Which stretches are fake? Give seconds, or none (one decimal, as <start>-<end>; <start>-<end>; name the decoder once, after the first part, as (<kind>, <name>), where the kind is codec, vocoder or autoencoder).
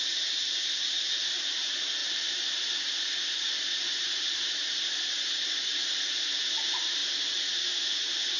0.0-8.4 (vocoder, BigVGAN v2)